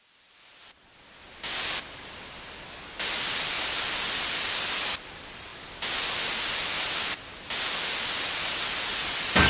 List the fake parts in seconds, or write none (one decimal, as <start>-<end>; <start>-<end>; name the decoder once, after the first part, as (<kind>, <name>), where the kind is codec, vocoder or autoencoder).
none